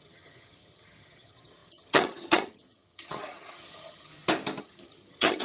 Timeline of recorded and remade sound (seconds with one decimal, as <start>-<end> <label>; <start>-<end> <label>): 0.0-4.1 remade; 4.1-4.6 recorded; 4.6-5.4 remade